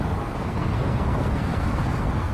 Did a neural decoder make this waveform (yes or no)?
yes